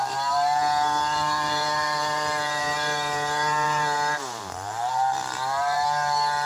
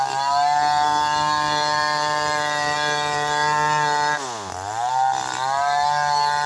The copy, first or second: first